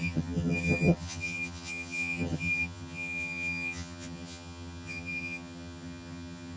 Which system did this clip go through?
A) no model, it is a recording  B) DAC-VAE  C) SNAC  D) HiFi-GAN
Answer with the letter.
D